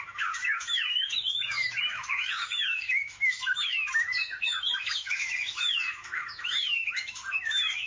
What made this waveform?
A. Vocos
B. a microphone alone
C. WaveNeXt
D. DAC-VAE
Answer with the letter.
D